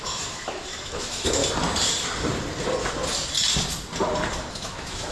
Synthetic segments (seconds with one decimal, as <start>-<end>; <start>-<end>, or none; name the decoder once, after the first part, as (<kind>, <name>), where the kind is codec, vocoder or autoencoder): 0.0-1.4 (autoencoder, DAC-VAE); 4.5-5.1